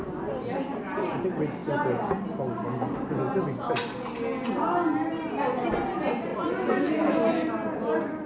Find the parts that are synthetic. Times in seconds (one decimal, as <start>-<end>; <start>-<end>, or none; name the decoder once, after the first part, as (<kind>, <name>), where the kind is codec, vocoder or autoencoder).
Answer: 6.3-7.1 (vocoder, Vocos)